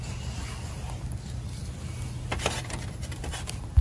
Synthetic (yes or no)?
no